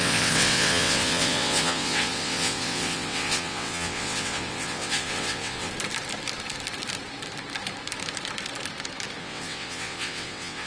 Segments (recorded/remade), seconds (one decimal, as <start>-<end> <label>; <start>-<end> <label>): 0.0-5.7 remade; 5.7-9.2 recorded; 9.2-10.7 remade